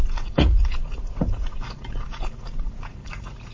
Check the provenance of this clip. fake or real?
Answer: fake